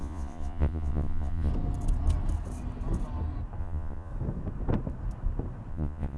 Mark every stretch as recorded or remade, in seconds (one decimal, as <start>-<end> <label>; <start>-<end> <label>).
0.0-1.5 remade; 1.5-3.6 recorded; 3.6-4.1 remade; 4.1-5.7 recorded; 5.7-6.2 remade